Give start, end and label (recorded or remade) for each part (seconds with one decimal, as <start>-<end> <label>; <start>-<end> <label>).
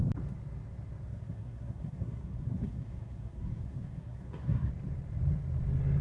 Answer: 0.0-1.1 recorded; 1.1-4.7 remade; 4.7-6.0 recorded